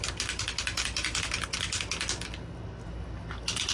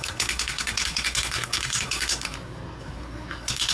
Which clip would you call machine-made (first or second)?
second